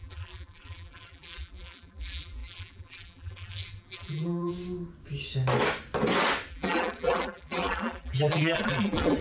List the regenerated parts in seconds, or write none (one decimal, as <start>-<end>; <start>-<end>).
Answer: 0.0-4.5; 6.5-9.2